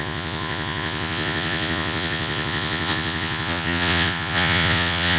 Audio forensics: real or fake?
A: fake